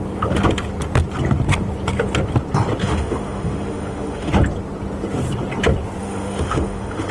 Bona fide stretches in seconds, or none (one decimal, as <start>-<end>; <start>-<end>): 0.0-2.8; 4.3-6.0